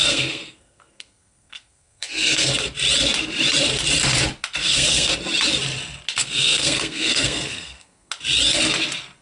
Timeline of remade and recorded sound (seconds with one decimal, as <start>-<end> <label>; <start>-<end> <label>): 0.0-2.5 remade; 2.5-4.6 recorded; 4.6-5.1 remade; 5.1-6.2 recorded; 6.2-8.1 remade; 8.1-9.2 recorded

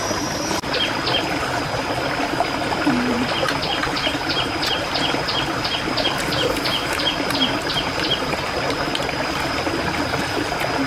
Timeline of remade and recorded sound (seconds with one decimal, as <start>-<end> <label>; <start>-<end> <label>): 0.0-3.8 recorded; 3.8-4.9 remade; 4.9-6.7 recorded; 6.7-9.6 remade; 9.6-10.9 recorded

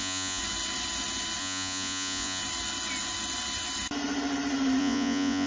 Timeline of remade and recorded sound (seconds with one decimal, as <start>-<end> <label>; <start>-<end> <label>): 0.0-0.4 remade; 0.4-1.4 recorded; 1.4-2.4 remade; 2.4-4.8 recorded; 4.8-5.5 remade